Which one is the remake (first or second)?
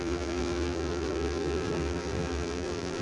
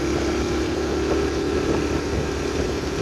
first